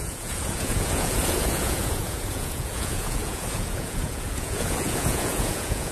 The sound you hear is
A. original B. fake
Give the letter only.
B